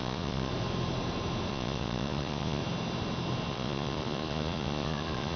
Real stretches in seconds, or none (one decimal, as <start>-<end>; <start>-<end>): 0.5-1.5; 2.6-3.5